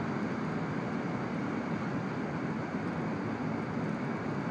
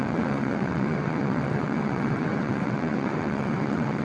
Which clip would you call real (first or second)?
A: first